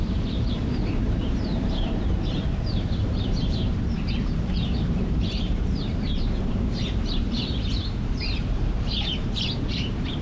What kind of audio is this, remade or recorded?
remade